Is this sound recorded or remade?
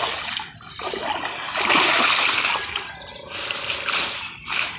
recorded